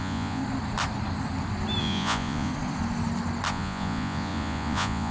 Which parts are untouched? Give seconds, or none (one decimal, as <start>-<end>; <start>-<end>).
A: 0.4-1.8; 2.5-3.5